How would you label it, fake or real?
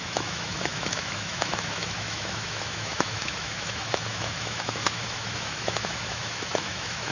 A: fake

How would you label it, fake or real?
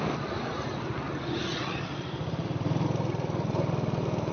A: real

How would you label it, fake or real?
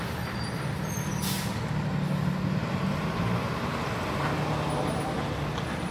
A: real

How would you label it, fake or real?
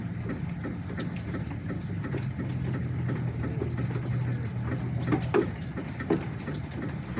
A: real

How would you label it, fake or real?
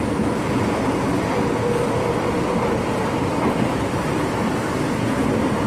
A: real